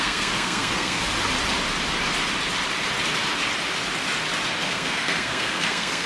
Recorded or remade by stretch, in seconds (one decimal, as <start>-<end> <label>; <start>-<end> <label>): 0.0-1.0 remade; 1.0-4.6 recorded; 4.6-6.1 remade